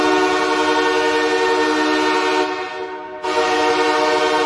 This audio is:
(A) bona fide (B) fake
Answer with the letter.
A